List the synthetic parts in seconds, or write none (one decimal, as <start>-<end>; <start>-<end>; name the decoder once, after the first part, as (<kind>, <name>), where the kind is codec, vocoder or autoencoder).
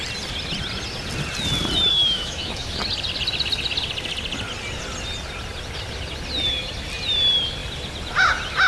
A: 1.9-2.8 (autoencoder, DAC-VAE)